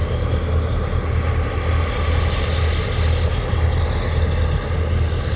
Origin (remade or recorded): recorded